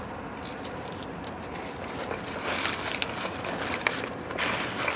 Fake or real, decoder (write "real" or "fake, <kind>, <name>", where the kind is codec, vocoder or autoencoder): real